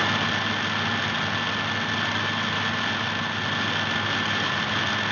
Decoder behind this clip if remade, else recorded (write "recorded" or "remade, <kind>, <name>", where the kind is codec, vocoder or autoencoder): recorded